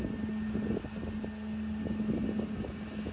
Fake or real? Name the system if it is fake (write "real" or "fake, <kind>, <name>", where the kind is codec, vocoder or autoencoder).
real